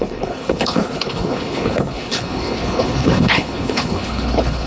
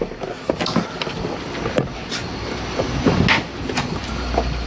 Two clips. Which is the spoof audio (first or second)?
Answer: first